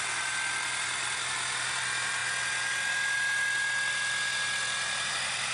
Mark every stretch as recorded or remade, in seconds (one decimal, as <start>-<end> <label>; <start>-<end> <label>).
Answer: 0.0-5.5 recorded